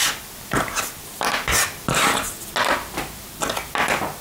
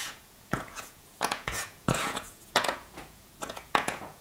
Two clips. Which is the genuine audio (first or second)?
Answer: first